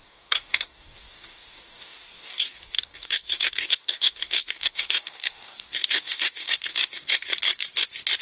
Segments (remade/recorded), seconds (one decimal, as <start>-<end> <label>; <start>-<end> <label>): 0.0-7.3 remade; 7.3-8.2 recorded